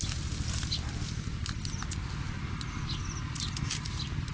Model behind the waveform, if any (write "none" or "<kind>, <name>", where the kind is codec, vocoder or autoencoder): none